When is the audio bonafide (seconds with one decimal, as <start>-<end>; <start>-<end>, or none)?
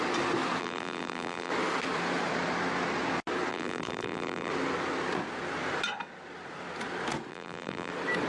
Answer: 0.0-0.6; 1.5-3.5; 4.5-7.3; 7.9-8.3